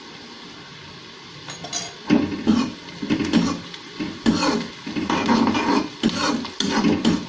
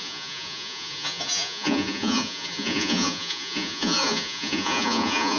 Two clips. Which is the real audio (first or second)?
first